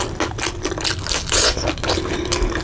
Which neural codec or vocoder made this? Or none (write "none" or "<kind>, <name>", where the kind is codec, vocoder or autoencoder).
none